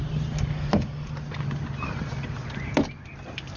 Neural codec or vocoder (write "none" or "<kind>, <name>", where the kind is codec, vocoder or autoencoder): none